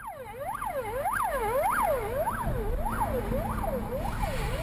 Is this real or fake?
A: real